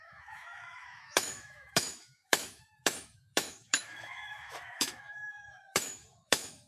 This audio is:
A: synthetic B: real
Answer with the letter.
A